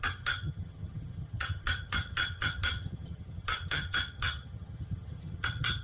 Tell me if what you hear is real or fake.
fake